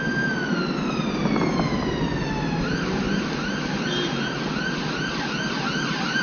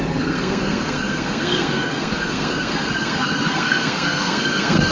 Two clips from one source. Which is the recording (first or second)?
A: first